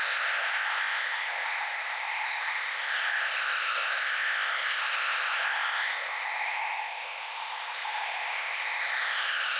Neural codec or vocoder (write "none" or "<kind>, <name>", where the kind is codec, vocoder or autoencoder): codec, ZipCodec